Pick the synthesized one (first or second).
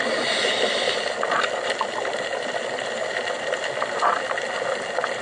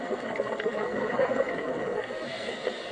second